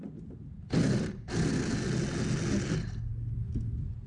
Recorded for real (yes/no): yes